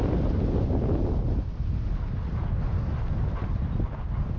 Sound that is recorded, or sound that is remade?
recorded